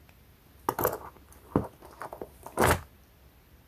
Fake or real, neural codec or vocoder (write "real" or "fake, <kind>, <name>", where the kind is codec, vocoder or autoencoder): real